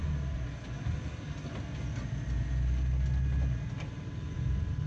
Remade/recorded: recorded